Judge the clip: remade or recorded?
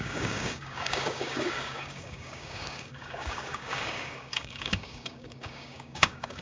remade